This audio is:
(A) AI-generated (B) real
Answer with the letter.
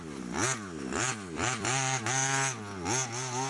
A